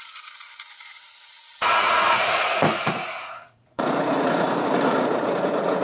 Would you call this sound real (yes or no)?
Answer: no